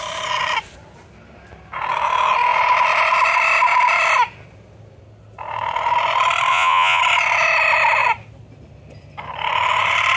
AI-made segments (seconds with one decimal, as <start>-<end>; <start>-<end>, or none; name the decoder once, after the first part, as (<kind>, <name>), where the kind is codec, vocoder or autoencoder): 6.5-7.0 (vocoder, Vocos)